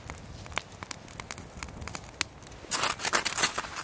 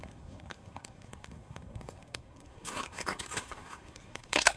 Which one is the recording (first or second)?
first